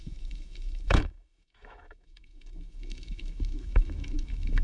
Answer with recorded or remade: remade